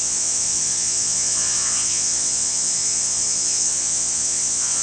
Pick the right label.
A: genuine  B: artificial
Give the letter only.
B